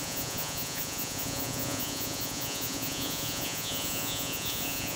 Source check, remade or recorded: remade